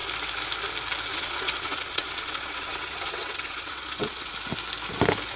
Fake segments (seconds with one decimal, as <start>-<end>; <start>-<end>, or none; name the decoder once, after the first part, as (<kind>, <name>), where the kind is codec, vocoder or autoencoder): 1.1-4.3 (vocoder, WaveNeXt)